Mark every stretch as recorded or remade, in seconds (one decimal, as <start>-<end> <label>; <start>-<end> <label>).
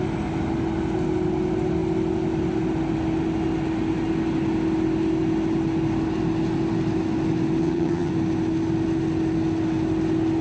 0.0-7.6 recorded; 7.6-8.1 remade; 8.1-10.4 recorded